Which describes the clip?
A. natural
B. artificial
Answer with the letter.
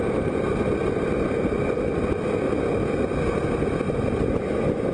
A